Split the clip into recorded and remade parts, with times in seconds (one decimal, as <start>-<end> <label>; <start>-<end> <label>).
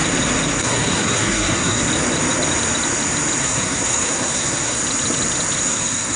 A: 0.0-0.6 recorded; 0.6-1.8 remade; 1.8-3.4 recorded; 3.4-4.8 remade; 4.8-5.6 recorded; 5.6-6.2 remade